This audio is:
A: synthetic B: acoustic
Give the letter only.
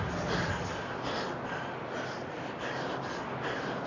B